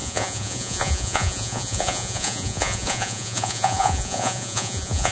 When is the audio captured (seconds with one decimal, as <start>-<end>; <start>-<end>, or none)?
none

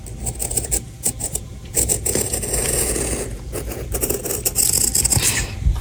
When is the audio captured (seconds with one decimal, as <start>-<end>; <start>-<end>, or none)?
0.0-0.4; 3.9-5.8